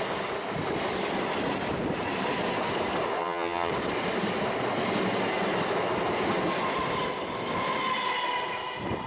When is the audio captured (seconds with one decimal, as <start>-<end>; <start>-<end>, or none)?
0.0-3.2; 3.7-9.1